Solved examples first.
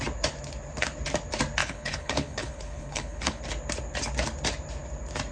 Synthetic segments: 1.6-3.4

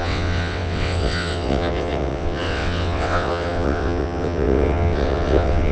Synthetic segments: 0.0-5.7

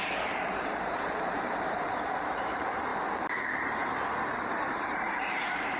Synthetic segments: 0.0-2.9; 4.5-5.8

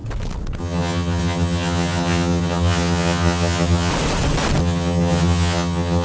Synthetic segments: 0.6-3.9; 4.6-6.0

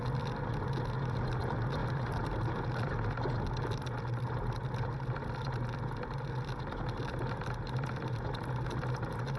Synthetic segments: none

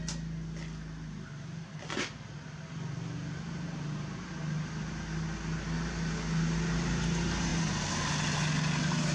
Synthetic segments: none

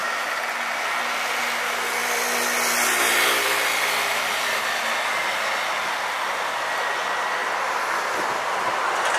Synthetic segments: 2.0-4.9